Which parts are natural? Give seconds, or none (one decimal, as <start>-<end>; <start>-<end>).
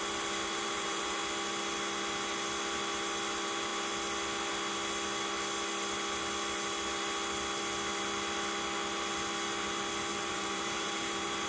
0.0-0.4; 1.2-10.1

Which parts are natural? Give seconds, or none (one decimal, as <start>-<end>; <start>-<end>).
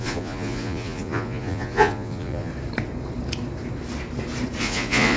2.5-4.6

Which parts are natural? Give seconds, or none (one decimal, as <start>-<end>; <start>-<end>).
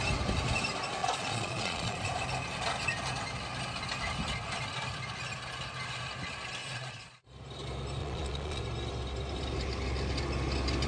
0.0-1.0; 2.1-6.6; 7.3-8.0; 8.6-10.9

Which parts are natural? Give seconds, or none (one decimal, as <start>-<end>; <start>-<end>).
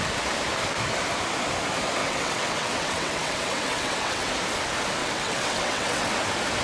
0.0-2.0; 4.3-5.0; 6.1-6.6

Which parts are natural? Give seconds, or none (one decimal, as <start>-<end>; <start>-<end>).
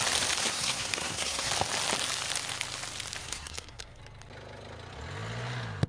0.0-0.4; 1.5-3.2; 4.0-5.9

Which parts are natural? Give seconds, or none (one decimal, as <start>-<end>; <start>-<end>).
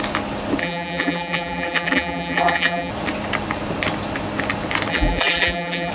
0.0-0.6; 2.9-4.9